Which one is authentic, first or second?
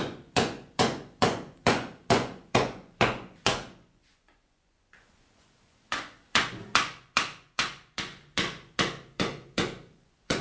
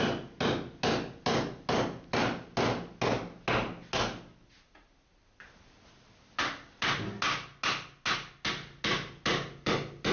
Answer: second